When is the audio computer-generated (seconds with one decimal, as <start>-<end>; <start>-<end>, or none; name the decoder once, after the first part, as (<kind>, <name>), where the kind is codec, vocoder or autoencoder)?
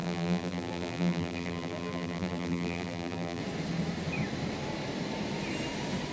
0.0-3.4 (vocoder, BigVGAN v2)